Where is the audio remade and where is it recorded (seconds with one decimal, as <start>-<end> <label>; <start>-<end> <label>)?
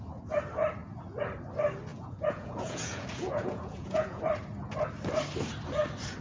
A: 0.0-1.9 recorded; 1.9-4.2 remade; 4.2-6.2 recorded